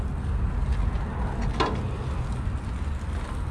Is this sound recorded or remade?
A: recorded